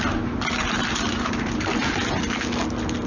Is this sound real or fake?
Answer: real